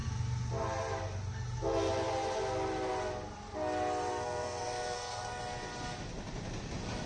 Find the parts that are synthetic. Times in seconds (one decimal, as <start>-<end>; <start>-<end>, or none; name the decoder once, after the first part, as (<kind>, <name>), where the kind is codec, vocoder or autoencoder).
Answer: 4.1-5.4 (codec, SNAC)